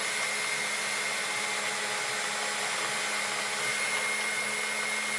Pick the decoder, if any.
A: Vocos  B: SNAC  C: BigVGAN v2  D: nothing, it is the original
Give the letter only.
D